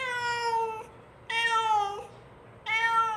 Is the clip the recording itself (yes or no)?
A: yes